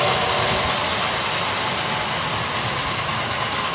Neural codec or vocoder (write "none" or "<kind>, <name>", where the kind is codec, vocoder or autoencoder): none